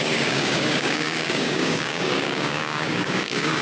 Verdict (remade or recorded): remade